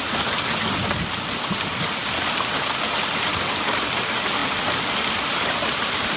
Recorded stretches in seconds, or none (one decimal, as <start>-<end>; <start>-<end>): 0.0-3.3; 3.9-6.2